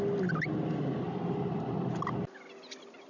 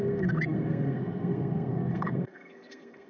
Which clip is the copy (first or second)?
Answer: second